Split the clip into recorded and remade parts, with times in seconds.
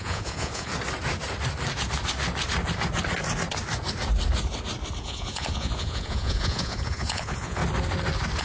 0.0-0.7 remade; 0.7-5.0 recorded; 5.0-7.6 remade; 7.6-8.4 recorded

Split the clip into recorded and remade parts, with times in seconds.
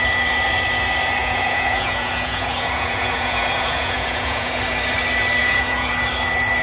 0.0-1.2 recorded; 1.2-4.6 remade; 4.6-5.4 recorded; 5.4-5.9 remade; 5.9-6.6 recorded